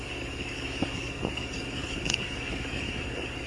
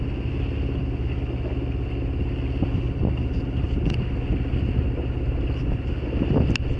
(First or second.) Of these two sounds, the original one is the second